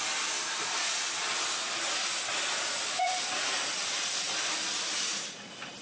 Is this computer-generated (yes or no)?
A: no